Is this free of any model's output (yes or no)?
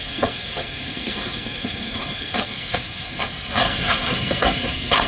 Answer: no